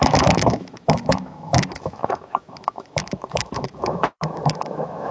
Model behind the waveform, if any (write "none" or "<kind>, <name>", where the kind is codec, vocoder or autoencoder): autoencoder, DAC-VAE